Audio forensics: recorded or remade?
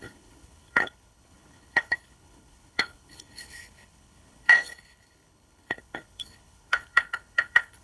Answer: remade